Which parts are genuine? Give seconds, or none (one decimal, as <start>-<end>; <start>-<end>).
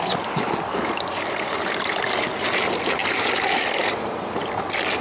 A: 0.0-5.0